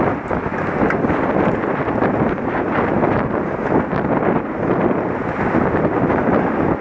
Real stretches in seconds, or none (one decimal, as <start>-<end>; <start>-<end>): 0.0-6.8